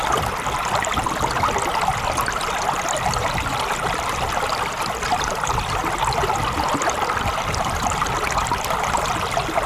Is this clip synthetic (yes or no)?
no